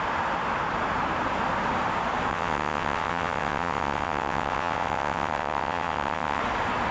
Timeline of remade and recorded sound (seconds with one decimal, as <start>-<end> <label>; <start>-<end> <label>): 0.0-2.3 recorded; 2.3-6.4 remade; 6.4-6.9 recorded